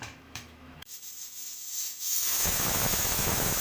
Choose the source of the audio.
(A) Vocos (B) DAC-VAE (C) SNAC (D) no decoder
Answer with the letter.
B